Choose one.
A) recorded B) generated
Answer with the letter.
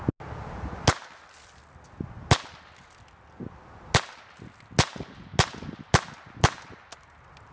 A